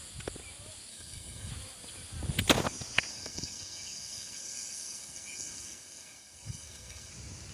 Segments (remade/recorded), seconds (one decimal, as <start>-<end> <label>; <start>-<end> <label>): 0.0-0.9 recorded; 0.9-1.5 remade; 1.5-3.1 recorded; 3.1-7.1 remade; 7.1-7.5 recorded